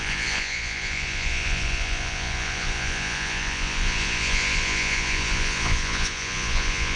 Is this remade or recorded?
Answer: remade